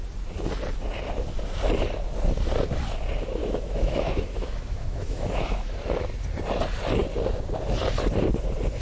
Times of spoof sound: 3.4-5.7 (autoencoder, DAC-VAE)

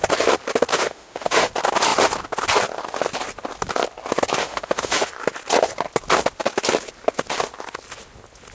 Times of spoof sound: 0.7-1.5 (autoencoder, DAC-VAE); 4.4-5.1

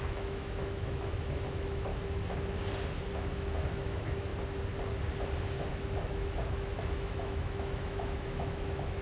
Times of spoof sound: 0.0-1.9 (autoencoder, DAC-VAE); 3.3-4.3; 5.7-9.0

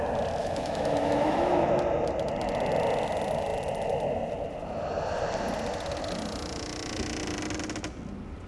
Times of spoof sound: 0.4-1.7 (autoencoder, DAC-VAE)

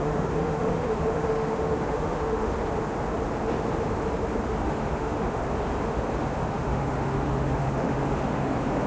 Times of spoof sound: 0.0-2.5 (autoencoder, DAC-VAE); 4.6-5.4; 6.5-8.9